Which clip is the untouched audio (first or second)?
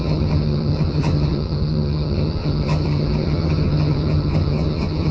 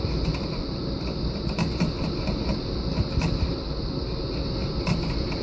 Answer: second